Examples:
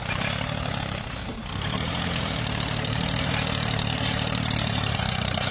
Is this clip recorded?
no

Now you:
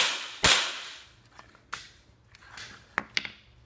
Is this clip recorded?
yes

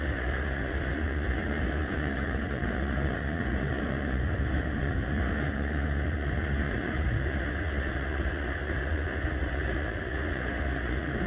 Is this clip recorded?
no